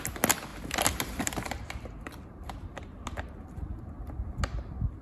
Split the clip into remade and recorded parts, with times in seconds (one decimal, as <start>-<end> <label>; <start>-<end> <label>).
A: 0.0-5.0 recorded